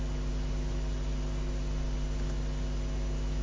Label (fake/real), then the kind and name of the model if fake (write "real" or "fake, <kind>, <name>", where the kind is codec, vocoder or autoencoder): real